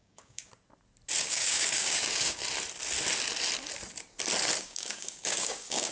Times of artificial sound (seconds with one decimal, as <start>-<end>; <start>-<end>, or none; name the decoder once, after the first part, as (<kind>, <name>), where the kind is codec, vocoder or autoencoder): 0.0-0.5 (codec, DAC); 1.2-2.4; 4.6-5.9